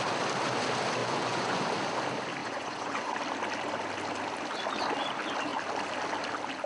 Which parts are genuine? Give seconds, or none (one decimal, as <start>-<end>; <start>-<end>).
0.0-1.0; 1.6-2.4; 3.1-6.7